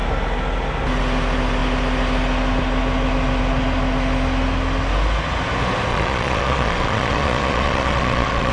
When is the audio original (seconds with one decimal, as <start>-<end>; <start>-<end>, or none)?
0.0-5.9